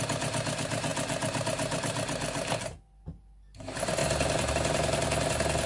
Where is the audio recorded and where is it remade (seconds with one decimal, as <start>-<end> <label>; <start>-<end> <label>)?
0.0-5.7 recorded